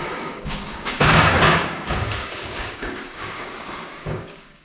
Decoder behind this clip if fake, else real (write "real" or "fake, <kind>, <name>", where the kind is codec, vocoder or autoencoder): fake, codec, DAC